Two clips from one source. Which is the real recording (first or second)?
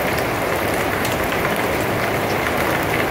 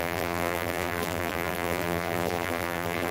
first